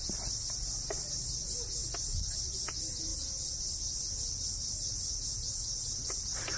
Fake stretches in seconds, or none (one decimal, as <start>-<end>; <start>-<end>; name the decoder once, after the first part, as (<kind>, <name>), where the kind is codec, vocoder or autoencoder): 3.1-4.0 (vocoder, BigVGAN v2)